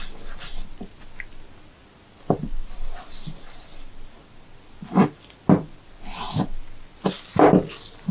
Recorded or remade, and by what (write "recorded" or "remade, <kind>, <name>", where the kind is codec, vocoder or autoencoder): recorded